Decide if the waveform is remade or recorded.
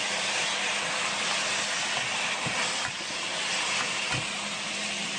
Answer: recorded